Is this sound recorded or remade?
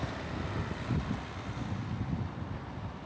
recorded